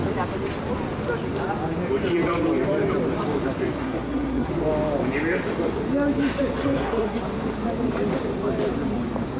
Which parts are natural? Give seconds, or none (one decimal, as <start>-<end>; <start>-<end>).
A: 0.0-3.8; 4.5-6.6; 7.2-9.4